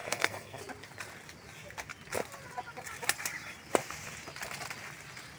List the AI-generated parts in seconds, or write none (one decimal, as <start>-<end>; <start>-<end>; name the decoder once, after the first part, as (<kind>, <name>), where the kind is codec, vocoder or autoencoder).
0.0-0.6 (codec, SNAC)